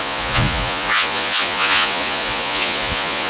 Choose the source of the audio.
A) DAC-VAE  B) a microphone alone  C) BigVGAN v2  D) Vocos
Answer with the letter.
D